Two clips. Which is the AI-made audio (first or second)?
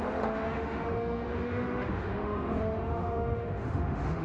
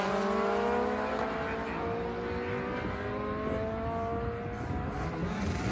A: first